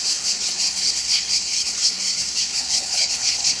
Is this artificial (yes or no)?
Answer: yes